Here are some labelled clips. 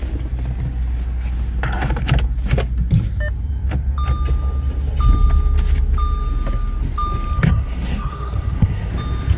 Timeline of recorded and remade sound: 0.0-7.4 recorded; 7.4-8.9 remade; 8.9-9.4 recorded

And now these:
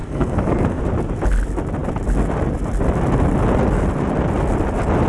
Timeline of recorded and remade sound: 0.0-0.8 remade; 0.8-5.1 recorded